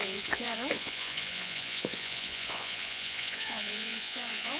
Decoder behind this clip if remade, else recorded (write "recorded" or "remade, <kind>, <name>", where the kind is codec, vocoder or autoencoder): remade, vocoder, Vocos